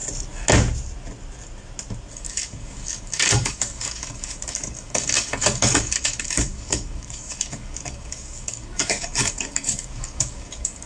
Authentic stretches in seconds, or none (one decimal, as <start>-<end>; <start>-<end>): 0.0-2.1